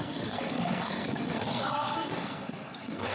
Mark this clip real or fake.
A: fake